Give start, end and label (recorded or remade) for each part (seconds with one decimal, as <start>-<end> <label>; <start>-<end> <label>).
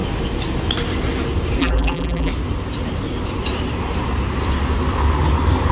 0.0-1.6 recorded; 1.6-2.3 remade; 2.3-5.7 recorded